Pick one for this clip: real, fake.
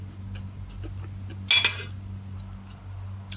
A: real